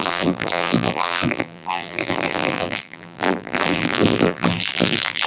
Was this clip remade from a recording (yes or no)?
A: yes